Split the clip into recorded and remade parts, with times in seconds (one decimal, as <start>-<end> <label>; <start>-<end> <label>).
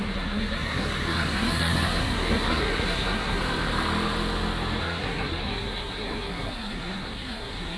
0.0-3.4 remade; 3.4-4.8 recorded; 4.8-7.8 remade